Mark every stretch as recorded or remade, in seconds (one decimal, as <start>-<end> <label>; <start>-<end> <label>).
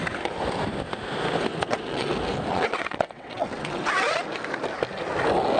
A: 0.0-1.5 recorded; 1.5-2.1 remade; 2.1-2.5 recorded; 2.5-3.9 remade; 3.9-5.6 recorded